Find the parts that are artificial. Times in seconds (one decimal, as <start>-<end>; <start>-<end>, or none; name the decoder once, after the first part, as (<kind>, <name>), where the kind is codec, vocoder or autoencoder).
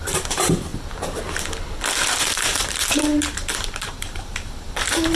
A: 0.0-0.7 (vocoder, BigVGAN v2); 2.2-5.2